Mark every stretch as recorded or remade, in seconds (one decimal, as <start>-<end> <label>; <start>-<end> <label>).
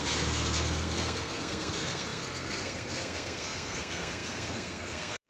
0.0-5.3 remade